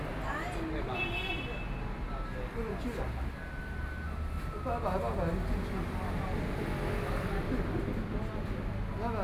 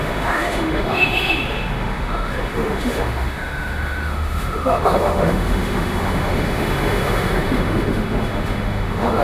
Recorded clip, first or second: first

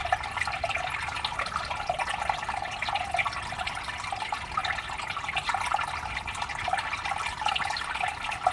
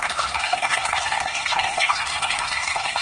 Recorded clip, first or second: first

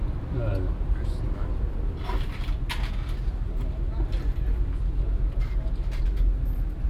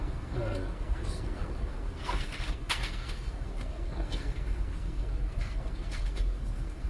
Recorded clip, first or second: first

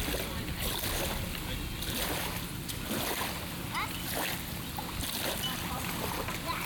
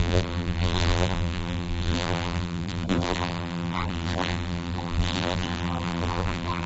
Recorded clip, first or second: first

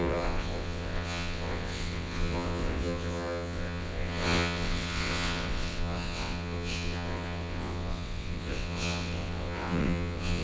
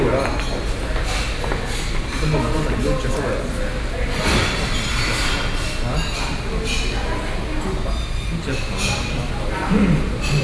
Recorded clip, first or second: second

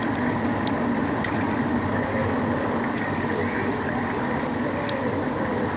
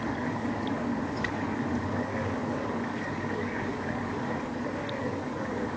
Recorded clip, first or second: first